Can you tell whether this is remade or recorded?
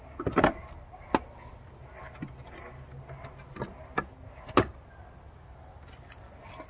recorded